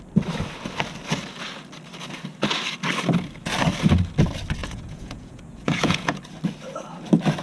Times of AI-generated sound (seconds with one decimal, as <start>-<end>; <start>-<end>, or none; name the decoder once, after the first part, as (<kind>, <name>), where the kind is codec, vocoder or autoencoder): 4.6-6.2 (vocoder, Vocos)